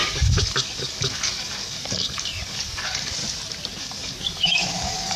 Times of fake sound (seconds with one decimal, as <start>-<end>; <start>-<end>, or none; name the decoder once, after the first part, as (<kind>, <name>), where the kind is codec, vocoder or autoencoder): 0.0-3.2 (codec, DAC); 3.8-5.2